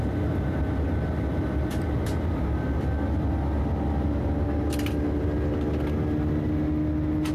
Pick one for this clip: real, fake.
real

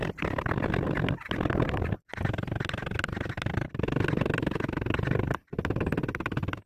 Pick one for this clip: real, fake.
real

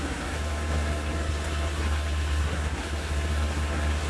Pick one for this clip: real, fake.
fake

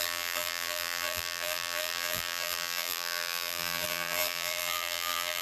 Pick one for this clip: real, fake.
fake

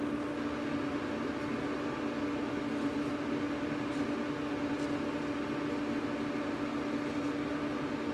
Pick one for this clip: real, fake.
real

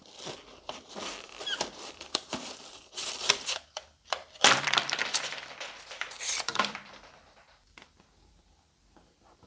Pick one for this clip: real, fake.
fake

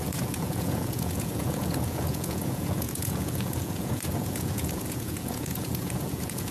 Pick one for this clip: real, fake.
fake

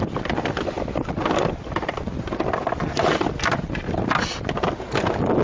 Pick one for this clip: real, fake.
real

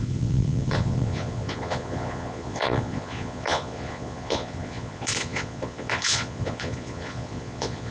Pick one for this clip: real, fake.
fake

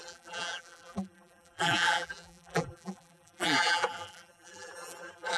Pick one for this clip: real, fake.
fake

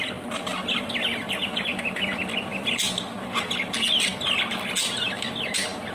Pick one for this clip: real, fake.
real